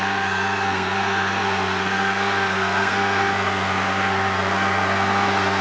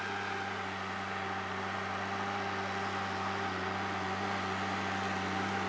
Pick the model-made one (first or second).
first